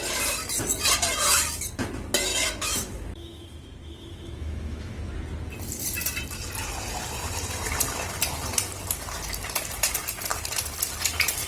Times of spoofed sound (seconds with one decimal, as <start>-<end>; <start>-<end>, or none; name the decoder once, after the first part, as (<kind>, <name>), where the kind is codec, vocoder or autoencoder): 2.3-5.0 (autoencoder, DAC-VAE)